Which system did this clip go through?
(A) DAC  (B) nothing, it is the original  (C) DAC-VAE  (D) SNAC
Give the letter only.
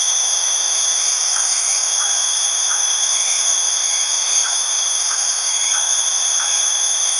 C